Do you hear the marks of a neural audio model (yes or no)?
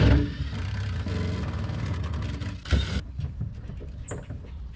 no